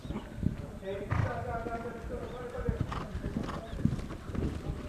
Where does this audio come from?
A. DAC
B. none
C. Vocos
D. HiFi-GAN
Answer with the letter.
B